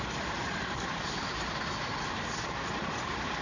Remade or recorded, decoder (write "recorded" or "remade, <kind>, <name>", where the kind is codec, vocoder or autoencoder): remade, vocoder, BigVGAN v2